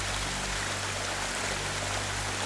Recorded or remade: recorded